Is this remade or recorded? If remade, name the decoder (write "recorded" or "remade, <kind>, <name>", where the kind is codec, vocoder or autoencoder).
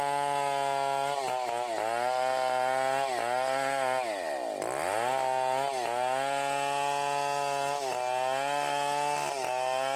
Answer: recorded